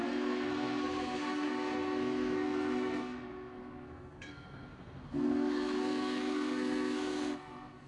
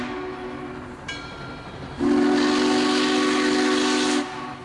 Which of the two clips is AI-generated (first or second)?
first